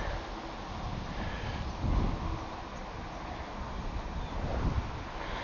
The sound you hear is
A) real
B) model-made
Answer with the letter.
A